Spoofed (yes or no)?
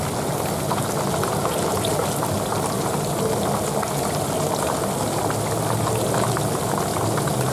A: no